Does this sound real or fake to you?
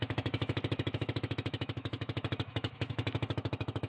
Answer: fake